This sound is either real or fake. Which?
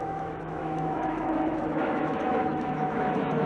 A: fake